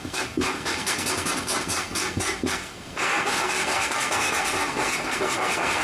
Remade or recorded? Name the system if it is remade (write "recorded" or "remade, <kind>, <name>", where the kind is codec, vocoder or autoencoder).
remade, codec, SNAC